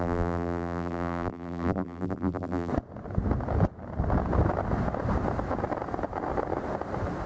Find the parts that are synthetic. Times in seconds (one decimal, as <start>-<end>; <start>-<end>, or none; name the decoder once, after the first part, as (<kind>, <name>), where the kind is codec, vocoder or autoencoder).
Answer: 0.0-2.7 (vocoder, BigVGAN v2)